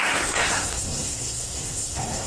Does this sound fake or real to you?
fake